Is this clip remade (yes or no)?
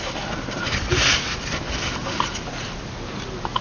no